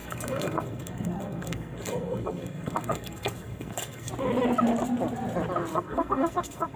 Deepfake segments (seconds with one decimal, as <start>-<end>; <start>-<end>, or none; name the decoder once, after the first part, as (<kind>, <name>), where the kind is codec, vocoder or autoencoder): 0.0-4.1 (codec, SNAC); 5.7-6.8